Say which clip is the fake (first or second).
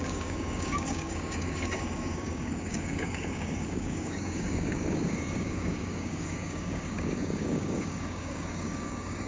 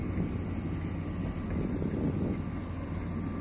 first